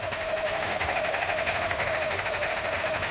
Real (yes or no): no